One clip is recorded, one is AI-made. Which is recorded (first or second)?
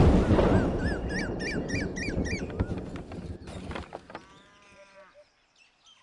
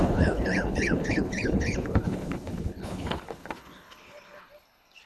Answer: first